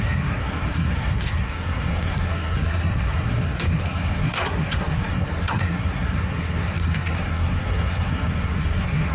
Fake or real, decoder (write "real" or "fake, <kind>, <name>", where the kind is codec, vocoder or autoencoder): fake, codec, SNAC